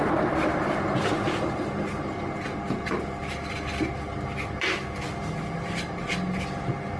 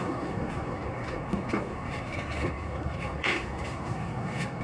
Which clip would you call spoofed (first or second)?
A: second